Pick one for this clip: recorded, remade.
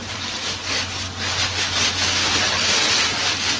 recorded